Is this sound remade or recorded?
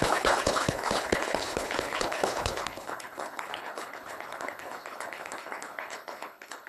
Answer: remade